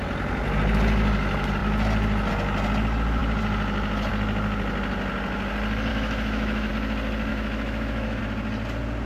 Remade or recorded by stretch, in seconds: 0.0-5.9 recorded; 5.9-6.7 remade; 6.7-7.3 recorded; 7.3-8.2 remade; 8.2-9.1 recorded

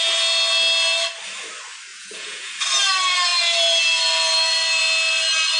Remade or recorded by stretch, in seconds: 0.0-1.9 recorded; 1.9-2.5 remade; 2.5-5.6 recorded